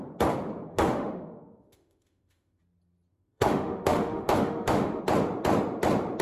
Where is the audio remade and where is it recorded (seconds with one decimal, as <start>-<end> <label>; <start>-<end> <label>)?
0.0-0.7 recorded; 0.7-2.6 remade; 2.6-3.1 recorded; 3.1-5.0 remade; 5.0-6.2 recorded